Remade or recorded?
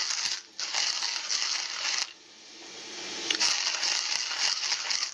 recorded